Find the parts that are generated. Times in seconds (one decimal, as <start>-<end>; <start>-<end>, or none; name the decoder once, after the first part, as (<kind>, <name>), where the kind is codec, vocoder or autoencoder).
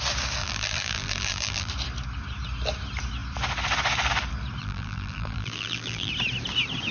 0.4-1.7 (vocoder, BigVGAN v2); 4.6-6.1